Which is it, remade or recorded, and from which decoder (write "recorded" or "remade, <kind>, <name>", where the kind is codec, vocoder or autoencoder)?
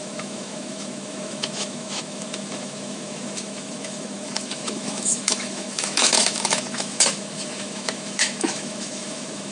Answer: remade, autoencoder, DAC-VAE